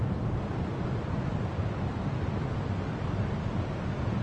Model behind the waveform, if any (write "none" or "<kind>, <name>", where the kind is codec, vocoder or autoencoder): none